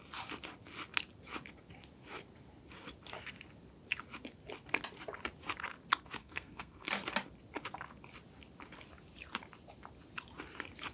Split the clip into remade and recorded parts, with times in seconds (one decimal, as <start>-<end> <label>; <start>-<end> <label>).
0.0-6.2 recorded; 6.2-6.9 remade; 6.9-10.9 recorded